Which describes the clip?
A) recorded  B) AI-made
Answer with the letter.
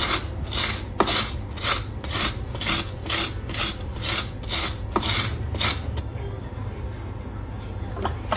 A